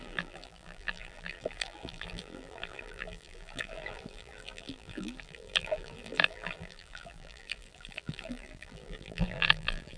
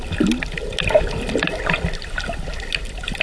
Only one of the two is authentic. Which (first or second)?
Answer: second